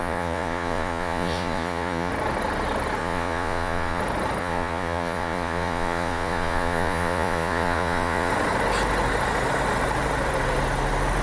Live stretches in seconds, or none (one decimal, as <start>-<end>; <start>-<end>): 2.1-3.0; 4.0-4.4; 8.3-11.2